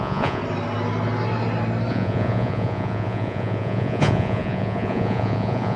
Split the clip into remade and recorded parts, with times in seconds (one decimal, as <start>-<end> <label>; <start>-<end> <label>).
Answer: 0.0-0.4 remade; 0.4-1.9 recorded; 1.9-5.8 remade